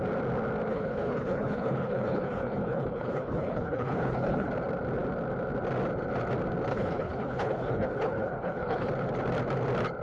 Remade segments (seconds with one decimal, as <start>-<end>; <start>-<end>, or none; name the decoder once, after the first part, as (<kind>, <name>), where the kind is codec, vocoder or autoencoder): 0.7-4.5 (codec, HILCodec); 6.7-8.9